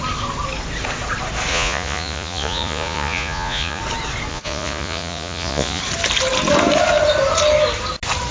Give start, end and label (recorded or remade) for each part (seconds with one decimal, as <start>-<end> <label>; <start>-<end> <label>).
0.0-1.5 recorded; 1.5-3.8 remade; 3.8-4.3 recorded; 4.3-5.8 remade; 5.8-8.3 recorded